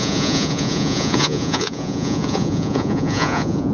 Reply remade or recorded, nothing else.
remade